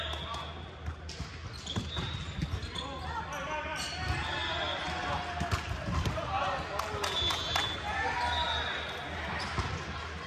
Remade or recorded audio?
recorded